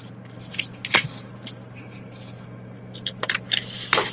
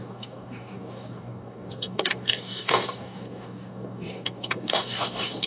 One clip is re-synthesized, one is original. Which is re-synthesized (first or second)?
second